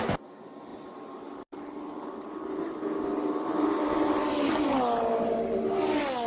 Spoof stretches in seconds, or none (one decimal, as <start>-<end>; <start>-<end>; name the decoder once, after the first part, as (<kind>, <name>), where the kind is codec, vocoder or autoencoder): 0.7-4.5 (vocoder, BigVGAN v2)